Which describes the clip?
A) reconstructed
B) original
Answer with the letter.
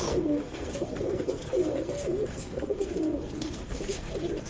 A